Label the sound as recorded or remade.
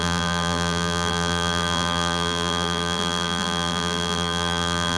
remade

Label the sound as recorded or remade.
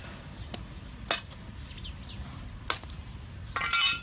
recorded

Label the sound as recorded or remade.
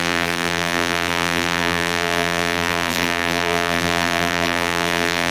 remade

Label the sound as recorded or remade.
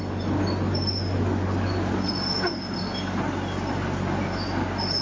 recorded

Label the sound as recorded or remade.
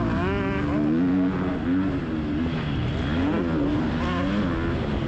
recorded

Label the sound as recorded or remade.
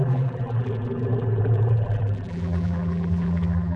remade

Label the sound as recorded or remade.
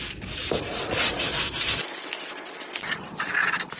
recorded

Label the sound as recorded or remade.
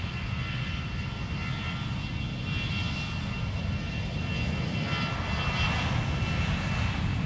recorded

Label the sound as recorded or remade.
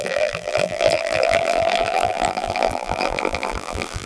remade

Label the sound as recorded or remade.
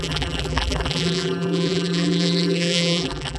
remade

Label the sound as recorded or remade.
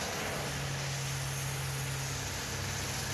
recorded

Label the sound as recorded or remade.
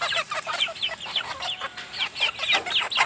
recorded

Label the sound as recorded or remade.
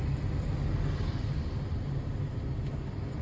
recorded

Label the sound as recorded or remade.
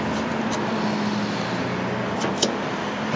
recorded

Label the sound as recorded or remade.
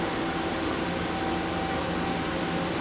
recorded